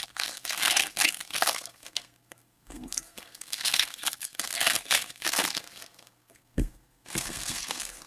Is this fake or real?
fake